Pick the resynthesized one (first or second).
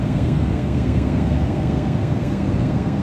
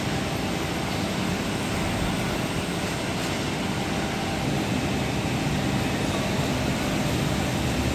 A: first